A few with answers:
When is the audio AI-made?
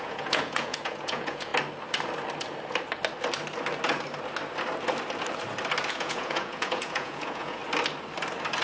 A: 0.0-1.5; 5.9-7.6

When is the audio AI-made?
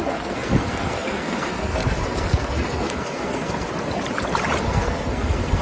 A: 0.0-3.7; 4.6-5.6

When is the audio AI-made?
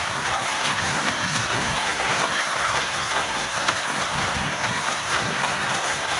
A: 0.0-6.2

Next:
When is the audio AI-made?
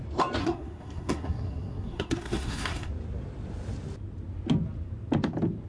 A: 0.4-2.9